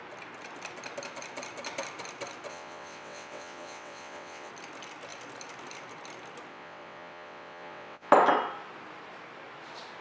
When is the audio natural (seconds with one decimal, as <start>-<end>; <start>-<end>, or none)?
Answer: 0.0-2.5; 4.5-6.5; 8.1-10.0